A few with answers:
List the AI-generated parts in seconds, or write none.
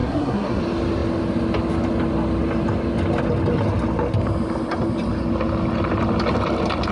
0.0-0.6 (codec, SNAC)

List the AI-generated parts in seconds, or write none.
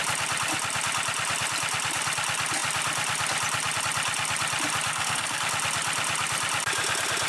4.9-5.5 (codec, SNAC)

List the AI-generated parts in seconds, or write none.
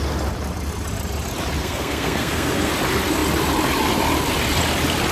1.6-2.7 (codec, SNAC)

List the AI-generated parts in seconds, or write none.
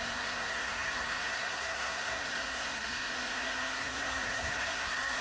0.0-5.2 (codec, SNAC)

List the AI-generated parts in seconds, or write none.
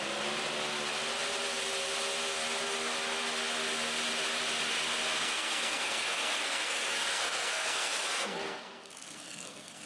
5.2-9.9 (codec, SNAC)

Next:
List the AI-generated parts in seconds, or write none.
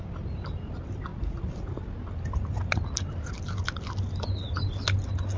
none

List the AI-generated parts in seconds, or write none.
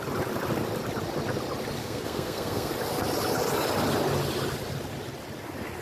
1.8-2.7 (codec, SNAC)